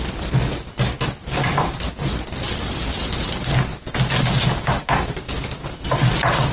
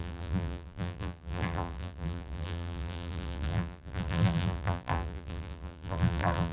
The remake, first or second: second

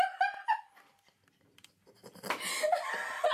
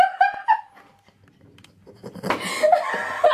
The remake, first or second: first